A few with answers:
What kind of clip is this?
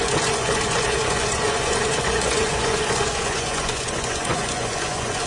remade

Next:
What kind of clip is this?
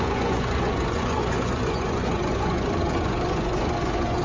remade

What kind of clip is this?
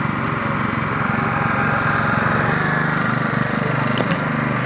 recorded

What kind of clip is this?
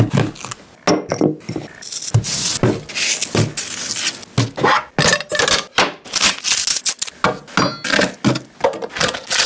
recorded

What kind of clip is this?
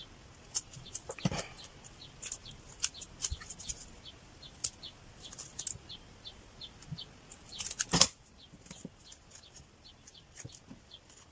recorded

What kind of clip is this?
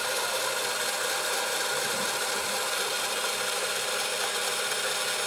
recorded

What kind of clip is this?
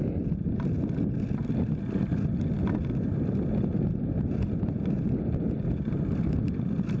recorded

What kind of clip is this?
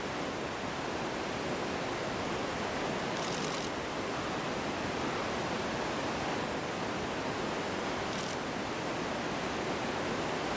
recorded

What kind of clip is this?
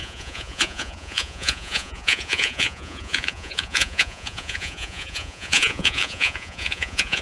remade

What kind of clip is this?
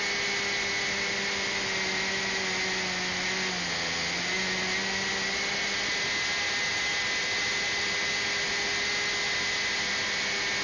recorded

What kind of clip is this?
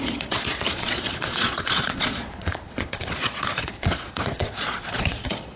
remade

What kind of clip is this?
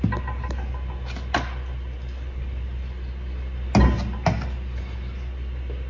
recorded